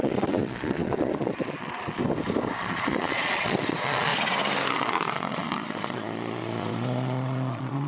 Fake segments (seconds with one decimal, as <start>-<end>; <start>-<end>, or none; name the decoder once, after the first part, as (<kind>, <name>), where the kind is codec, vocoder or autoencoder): 0.0-2.0 (vocoder, Vocos); 2.6-4.1; 4.7-7.9